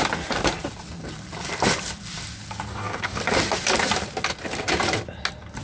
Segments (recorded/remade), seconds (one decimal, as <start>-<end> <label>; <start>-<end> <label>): 0.0-2.7 recorded; 2.7-3.2 remade; 3.2-5.6 recorded